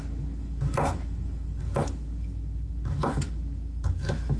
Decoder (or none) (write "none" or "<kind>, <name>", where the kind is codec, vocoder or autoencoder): autoencoder, DAC-VAE